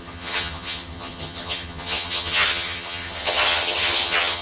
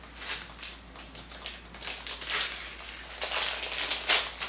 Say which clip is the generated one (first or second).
first